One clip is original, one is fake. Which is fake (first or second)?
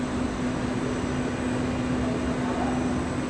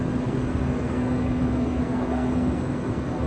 second